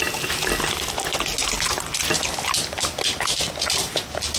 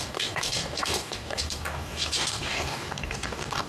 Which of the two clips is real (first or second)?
first